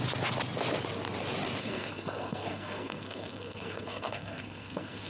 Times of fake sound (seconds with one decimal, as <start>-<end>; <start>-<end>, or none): 1.6-5.1

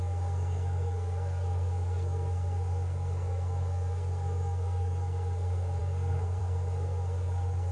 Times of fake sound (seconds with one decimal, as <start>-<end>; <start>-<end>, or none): 0.0-7.7

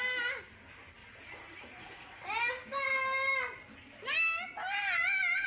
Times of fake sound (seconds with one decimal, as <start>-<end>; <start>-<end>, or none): 1.0-2.2

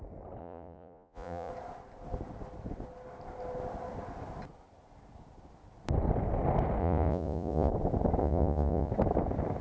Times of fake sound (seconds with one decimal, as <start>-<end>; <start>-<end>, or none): 0.4-1.5; 6.8-7.7; 8.2-8.9

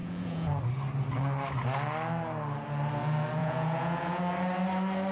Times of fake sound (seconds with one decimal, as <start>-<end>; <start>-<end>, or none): 0.0-0.6; 3.4-4.2